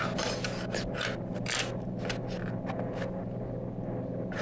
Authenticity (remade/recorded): recorded